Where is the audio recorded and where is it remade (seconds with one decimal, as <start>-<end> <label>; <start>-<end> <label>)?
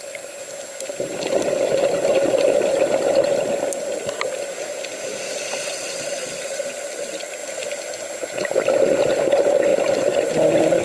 0.0-10.8 recorded